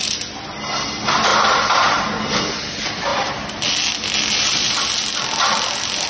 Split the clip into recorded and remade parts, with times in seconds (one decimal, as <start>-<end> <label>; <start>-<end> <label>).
0.0-6.1 recorded